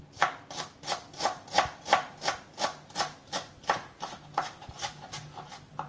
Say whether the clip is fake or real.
real